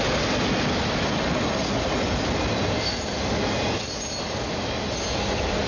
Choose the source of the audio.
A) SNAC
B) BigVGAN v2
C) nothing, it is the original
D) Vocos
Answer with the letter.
C